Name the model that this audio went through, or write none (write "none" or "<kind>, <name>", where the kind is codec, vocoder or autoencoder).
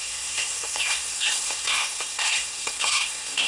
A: codec, SNAC